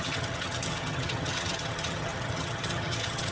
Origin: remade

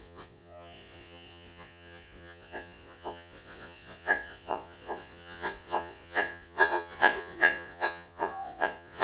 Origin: remade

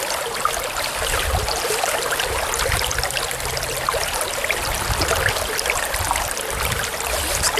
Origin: recorded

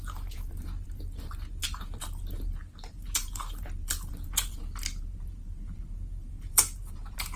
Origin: remade